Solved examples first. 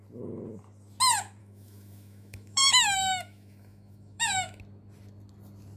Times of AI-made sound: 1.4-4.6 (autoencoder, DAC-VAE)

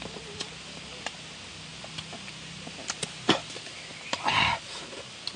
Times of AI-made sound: none

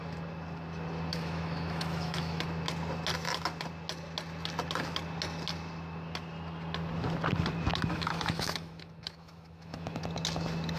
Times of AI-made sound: 1.1-2.4 (autoencoder, DAC-VAE); 7.9-10.0

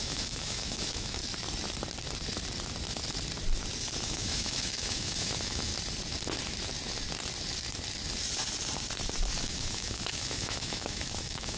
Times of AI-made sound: 0.0-1.2 (autoencoder, DAC-VAE); 4.0-5.7; 9.4-11.6

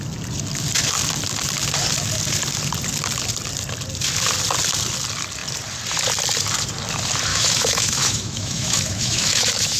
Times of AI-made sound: 7.3-9.8 (autoencoder, DAC-VAE)

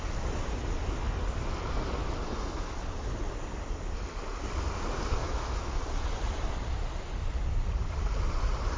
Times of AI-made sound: 5.2-5.7 (autoencoder, DAC-VAE)

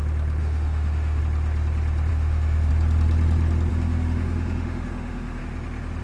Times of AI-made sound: 0.4-1.2 (autoencoder, DAC-VAE); 2.1-2.7; 3.7-5.4